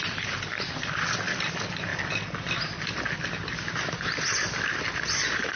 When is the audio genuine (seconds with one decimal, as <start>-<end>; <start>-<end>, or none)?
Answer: 0.0-5.6